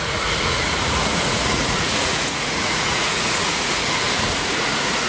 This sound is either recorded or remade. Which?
remade